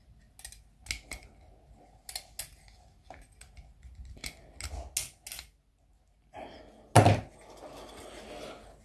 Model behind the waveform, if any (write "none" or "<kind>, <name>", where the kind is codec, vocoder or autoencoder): none